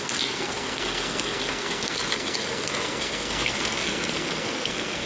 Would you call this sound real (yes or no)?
no